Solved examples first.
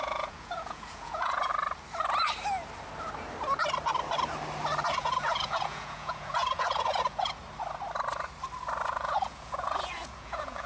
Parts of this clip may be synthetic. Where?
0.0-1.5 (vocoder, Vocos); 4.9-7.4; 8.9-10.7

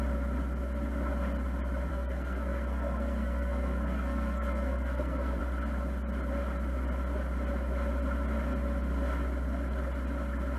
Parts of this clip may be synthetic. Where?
1.9-5.4 (codec, SNAC)

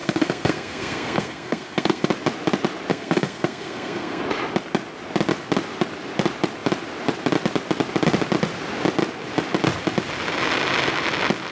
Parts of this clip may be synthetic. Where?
0.0-2.1 (codec, SNAC); 2.9-4.2

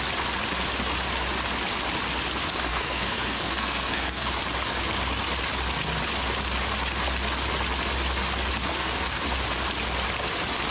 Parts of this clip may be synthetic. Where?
2.7-4.3 (codec, SNAC); 8.7-9.2

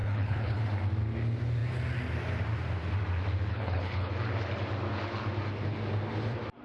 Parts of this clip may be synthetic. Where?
0.0-0.6 (codec, HILCodec); 3.5-4.1

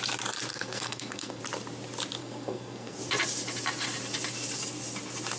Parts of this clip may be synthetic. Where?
0.5-1.4 (codec, SNAC); 2.2-3.0

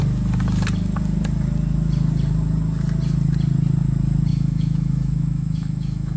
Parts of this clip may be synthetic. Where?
4.3-6.2 (autoencoder, DAC-VAE)